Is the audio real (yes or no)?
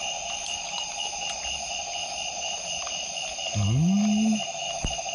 yes